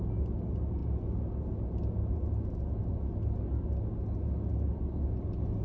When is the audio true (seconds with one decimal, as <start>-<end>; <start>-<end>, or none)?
0.0-5.6